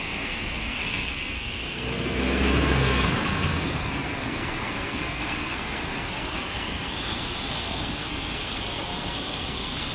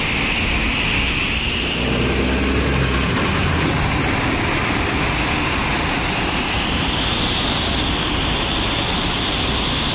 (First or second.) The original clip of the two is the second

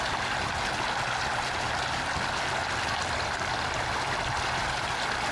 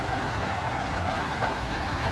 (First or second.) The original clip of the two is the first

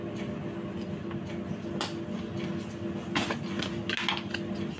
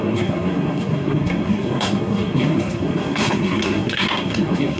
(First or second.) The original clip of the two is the first